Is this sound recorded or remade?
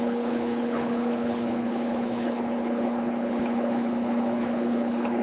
remade